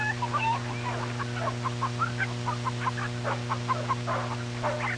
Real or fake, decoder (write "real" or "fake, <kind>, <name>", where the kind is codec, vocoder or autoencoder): real